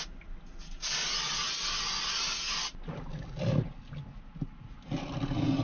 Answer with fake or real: real